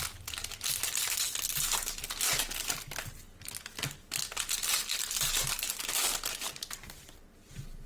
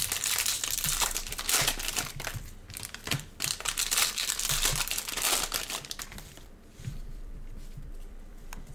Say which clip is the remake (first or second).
second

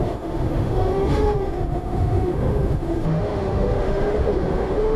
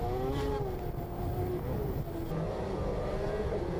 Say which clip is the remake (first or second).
first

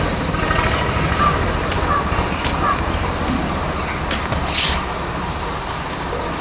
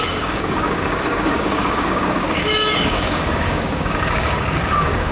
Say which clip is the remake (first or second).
second